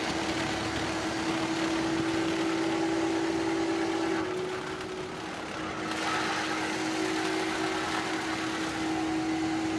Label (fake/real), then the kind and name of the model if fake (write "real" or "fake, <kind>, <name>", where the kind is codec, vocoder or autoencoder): real